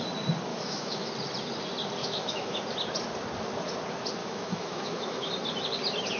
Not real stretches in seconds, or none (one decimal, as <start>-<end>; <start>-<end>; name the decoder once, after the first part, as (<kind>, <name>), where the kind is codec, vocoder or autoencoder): 0.5-1.1 (autoencoder, DAC-VAE); 2.0-2.6; 4.2-5.3